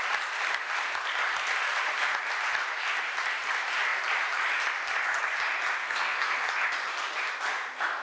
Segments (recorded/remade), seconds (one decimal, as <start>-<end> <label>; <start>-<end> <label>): 0.0-5.8 recorded; 5.8-6.5 remade; 6.5-8.0 recorded